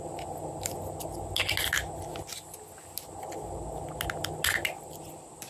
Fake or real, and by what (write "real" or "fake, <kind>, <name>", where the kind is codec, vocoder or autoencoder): real